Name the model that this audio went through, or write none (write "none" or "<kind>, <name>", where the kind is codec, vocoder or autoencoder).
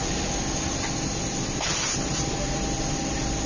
none